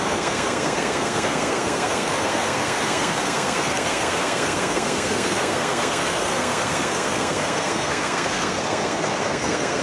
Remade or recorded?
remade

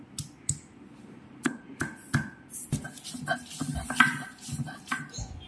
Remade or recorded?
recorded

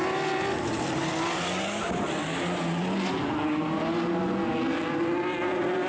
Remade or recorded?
recorded